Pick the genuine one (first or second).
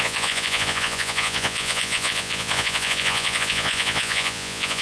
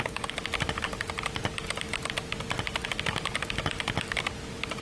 second